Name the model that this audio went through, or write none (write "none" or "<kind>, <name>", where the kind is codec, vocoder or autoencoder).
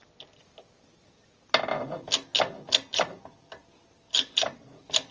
none